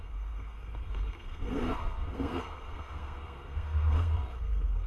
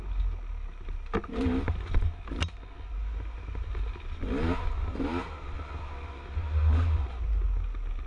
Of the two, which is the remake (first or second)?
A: first